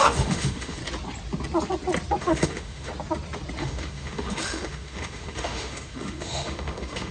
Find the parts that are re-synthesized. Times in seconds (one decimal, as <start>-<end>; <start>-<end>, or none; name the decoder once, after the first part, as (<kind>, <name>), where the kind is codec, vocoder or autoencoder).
0.0-0.8 (autoencoder, DAC-VAE); 2.2-2.9; 3.6-7.1